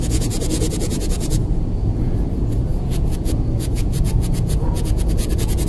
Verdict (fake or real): fake